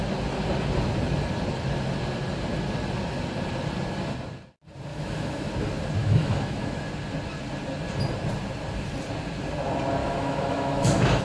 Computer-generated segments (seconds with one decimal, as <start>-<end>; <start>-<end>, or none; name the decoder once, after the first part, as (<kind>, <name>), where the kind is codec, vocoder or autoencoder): 4.9-5.5 (autoencoder, DAC-VAE); 6.0-6.8; 10.0-11.2

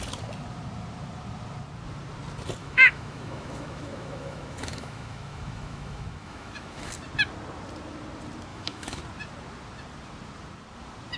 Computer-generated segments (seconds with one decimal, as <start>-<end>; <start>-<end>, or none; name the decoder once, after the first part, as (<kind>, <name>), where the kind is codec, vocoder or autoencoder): 2.6-6.9 (autoencoder, DAC-VAE); 8.5-9.0

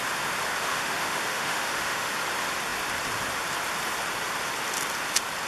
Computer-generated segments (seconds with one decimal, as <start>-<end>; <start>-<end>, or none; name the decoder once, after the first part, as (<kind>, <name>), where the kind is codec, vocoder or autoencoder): 0.6-2.1 (autoencoder, DAC-VAE)

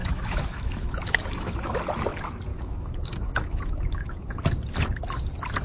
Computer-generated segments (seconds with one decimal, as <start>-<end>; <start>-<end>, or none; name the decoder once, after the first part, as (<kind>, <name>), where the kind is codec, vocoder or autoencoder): 0.0-1.8 (autoencoder, DAC-VAE); 2.5-4.4

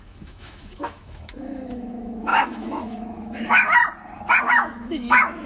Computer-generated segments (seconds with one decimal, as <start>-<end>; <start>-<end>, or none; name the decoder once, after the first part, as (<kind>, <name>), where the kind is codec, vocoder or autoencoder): 0.0-3.8 (autoencoder, DAC-VAE); 4.4-5.5

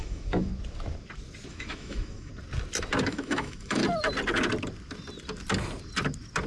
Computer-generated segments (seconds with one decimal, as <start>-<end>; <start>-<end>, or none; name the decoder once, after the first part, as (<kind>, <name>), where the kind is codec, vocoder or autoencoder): 0.0-0.5 (autoencoder, DAC-VAE); 1.5-2.3; 3.1-3.8